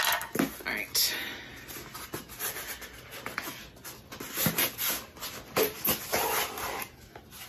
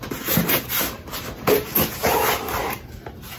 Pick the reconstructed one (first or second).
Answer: second